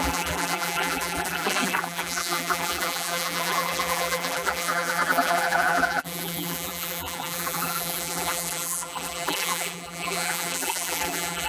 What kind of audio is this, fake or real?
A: fake